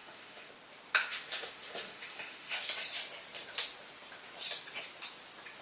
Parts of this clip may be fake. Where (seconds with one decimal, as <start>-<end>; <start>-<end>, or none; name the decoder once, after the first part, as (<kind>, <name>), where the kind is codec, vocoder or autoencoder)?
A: 0.0-0.5 (autoencoder, DAC-VAE); 1.0-2.7